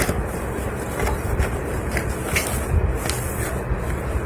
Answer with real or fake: real